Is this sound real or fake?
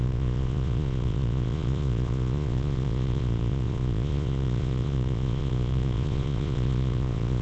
fake